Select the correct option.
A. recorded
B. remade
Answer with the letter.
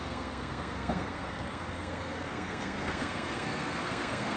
B